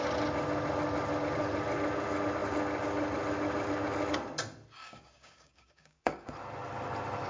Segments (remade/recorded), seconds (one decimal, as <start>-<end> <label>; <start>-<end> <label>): 0.0-4.8 recorded; 4.8-6.3 remade; 6.3-7.3 recorded